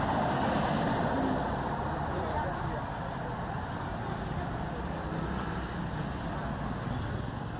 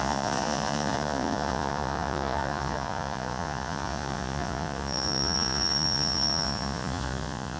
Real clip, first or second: first